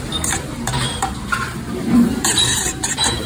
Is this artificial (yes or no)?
yes